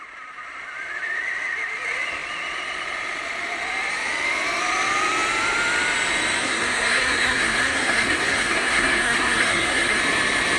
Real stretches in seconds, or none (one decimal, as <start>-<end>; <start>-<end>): 0.0-6.4; 10.0-10.6

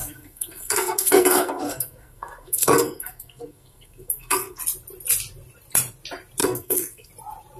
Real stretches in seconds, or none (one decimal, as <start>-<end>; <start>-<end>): 4.6-6.4; 7.1-7.6

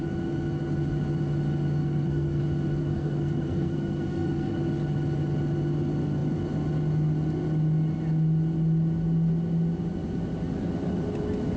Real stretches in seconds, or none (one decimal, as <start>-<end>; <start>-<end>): 0.0-1.8; 2.4-2.8; 4.6-11.6

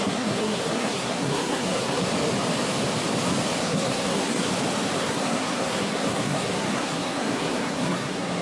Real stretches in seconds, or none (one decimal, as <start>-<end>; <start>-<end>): 2.1-3.6; 4.5-5.0

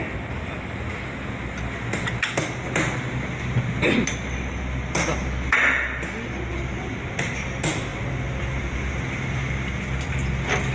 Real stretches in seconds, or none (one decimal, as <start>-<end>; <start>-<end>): 0.0-10.7